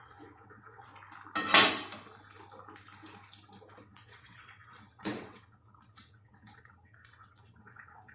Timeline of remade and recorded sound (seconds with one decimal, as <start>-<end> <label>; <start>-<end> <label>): 0.0-0.9 remade; 0.9-3.8 recorded; 3.8-8.1 remade

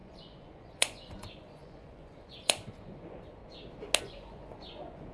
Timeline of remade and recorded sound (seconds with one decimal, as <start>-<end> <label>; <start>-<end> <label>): 0.0-3.4 remade; 3.4-4.0 recorded; 4.0-5.1 remade

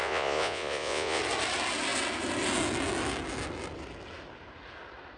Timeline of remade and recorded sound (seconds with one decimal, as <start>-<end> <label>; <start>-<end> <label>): 0.0-1.2 remade; 1.2-5.2 recorded

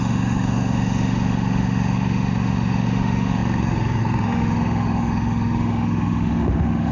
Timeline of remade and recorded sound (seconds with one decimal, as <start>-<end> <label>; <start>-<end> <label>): 0.0-6.9 remade

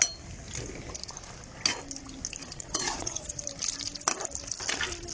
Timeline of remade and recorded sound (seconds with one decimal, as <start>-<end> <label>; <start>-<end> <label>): 0.0-2.4 recorded; 2.4-3.4 remade; 3.4-5.1 recorded